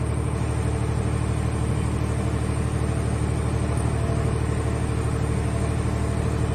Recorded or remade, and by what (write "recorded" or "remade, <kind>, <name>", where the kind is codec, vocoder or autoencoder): recorded